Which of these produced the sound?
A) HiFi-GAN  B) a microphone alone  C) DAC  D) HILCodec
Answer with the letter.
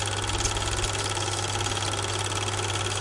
B